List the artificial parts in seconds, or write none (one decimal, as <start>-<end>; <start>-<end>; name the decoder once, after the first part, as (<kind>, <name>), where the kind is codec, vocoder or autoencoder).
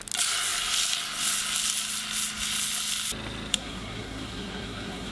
3.5-5.1 (codec, SNAC)